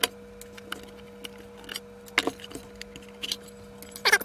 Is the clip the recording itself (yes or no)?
yes